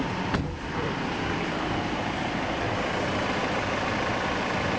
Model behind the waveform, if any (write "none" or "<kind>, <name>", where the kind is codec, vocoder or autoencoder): none